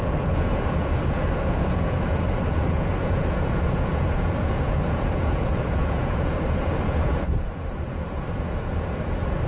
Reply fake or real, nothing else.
fake